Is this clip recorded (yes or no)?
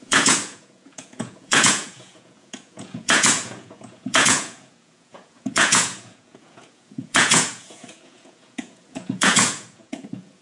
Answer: no